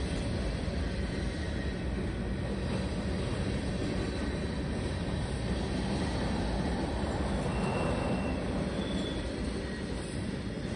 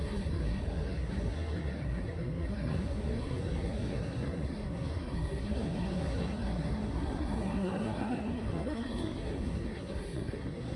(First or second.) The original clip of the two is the first